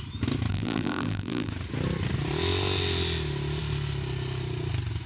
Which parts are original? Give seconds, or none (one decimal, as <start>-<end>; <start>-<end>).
0.0-0.5; 1.5-5.1